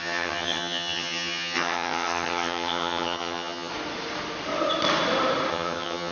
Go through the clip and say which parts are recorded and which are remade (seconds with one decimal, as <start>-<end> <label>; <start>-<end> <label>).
0.0-3.7 remade; 3.7-5.5 recorded; 5.5-6.1 remade